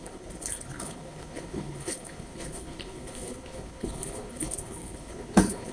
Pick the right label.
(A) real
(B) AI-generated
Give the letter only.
B